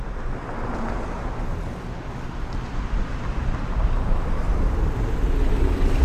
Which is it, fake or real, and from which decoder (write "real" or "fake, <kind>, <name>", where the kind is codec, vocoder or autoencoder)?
real